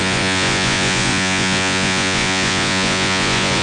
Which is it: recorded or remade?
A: remade